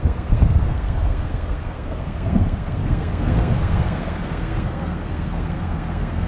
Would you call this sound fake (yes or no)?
yes